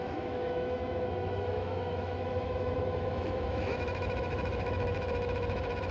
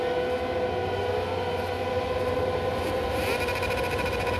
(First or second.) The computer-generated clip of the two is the first